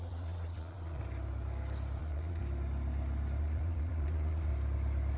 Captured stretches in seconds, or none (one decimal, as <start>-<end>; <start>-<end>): 1.0-2.0; 2.4-3.4; 4.5-5.2